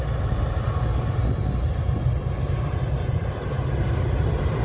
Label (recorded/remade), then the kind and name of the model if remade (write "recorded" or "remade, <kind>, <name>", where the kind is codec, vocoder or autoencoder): remade, vocoder, BigVGAN v2